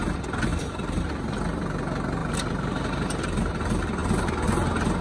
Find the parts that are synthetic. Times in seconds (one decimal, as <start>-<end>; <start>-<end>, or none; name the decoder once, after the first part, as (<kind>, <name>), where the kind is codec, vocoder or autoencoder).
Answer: 0.5-1.1 (vocoder, BigVGAN v2); 2.2-3.6